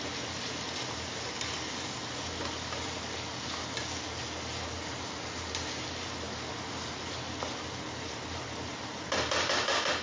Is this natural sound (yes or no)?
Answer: yes